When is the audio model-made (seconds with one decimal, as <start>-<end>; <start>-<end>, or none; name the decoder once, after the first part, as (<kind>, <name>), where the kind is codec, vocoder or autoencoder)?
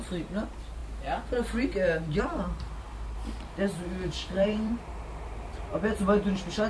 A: 0.0-0.8 (vocoder, BigVGAN v2); 2.2-2.9; 4.1-5.7